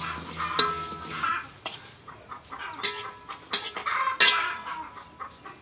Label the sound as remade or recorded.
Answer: recorded